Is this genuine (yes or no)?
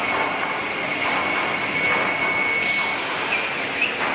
yes